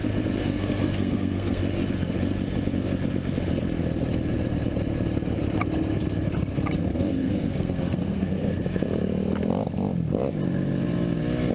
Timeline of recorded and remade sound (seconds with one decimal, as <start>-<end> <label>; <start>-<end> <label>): 0.0-0.4 recorded; 0.4-1.6 remade; 1.6-6.8 recorded; 6.8-8.6 remade; 8.6-11.5 recorded